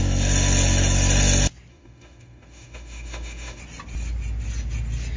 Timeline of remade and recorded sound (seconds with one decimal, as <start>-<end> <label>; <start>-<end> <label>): 0.0-1.7 recorded; 1.7-3.6 remade; 3.6-5.2 recorded